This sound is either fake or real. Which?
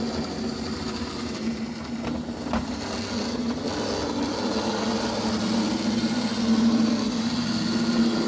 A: real